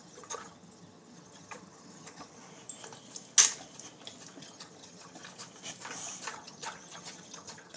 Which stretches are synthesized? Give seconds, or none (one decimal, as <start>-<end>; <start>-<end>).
0.0-2.4; 4.4-5.2; 6.3-7.8